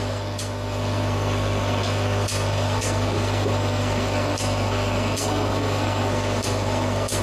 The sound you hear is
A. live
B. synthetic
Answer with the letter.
B